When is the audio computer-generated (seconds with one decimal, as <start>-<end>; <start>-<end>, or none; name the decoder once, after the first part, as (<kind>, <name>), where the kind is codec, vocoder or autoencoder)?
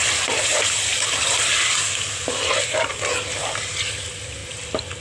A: 0.0-1.7 (vocoder, BigVGAN v2); 2.9-3.4; 4.0-4.4